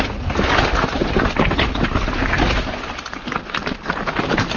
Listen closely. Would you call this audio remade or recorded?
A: recorded